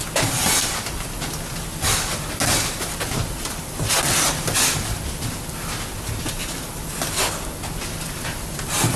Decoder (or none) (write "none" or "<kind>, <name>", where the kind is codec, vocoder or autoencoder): none